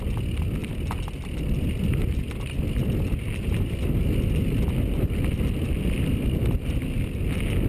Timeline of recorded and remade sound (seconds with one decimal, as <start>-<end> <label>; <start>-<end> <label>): 0.0-7.7 recorded